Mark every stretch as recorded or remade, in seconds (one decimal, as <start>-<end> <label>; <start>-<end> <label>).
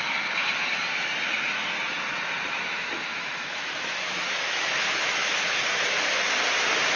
0.0-2.7 recorded; 2.7-5.7 remade; 5.7-7.0 recorded